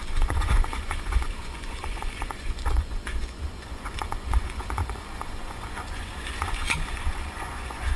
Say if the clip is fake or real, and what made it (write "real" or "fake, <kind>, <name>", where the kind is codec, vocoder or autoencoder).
fake, vocoder, Vocos